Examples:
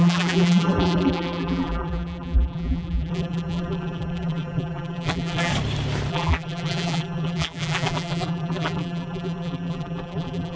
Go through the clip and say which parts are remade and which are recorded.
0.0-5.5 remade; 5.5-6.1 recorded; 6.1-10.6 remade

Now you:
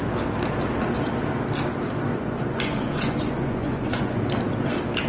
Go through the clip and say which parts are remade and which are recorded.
0.0-2.1 recorded; 2.1-4.2 remade; 4.2-5.1 recorded